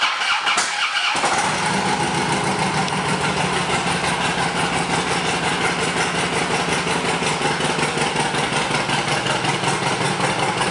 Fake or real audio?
real